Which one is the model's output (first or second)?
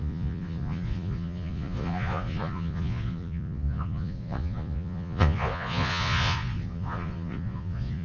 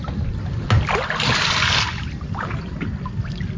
first